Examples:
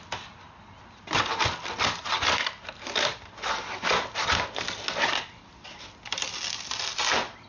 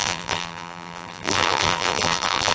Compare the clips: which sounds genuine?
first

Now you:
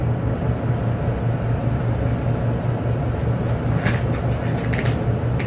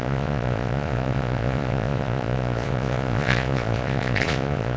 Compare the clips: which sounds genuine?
first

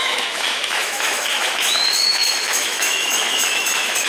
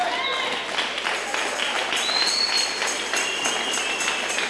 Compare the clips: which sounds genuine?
second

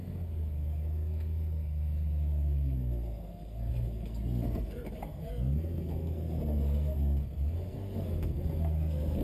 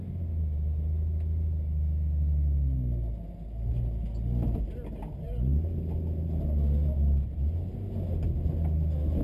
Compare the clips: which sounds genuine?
second